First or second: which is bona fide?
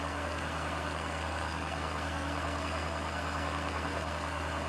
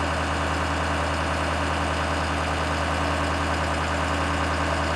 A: second